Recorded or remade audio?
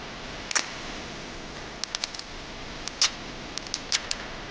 recorded